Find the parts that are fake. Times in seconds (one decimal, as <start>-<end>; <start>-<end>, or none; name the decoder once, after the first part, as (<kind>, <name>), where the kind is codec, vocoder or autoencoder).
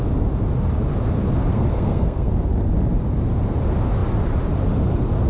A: 1.5-2.3 (codec, SNAC)